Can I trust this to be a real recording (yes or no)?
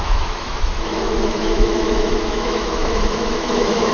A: no